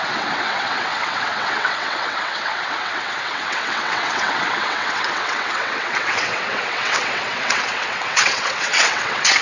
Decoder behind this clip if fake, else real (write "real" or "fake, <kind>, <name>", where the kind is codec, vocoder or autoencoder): fake, vocoder, WaveNeXt